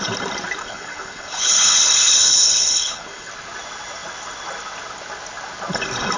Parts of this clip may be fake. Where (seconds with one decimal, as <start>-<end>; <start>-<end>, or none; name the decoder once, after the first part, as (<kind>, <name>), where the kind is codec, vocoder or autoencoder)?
0.6-3.3 (codec, HILCodec)